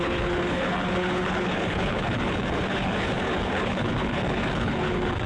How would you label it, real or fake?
fake